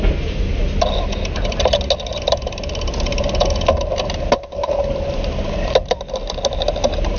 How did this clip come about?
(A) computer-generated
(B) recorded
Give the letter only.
B